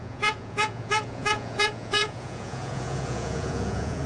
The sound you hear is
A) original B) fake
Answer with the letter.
B